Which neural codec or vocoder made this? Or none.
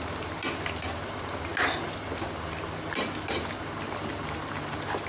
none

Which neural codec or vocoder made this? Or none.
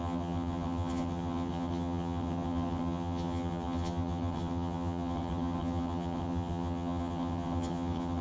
vocoder, HiFi-GAN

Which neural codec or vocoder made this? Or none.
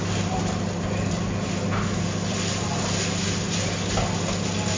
none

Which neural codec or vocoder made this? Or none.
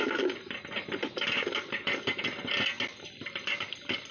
none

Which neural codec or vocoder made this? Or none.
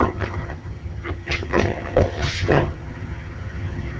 vocoder, HiFi-GAN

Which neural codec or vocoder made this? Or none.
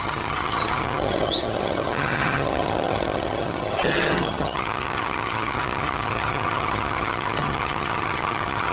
vocoder, HiFi-GAN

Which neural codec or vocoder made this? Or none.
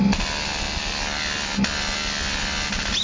none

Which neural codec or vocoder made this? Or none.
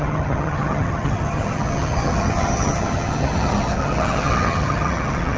vocoder, HiFi-GAN